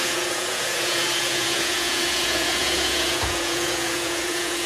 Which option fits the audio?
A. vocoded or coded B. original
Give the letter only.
A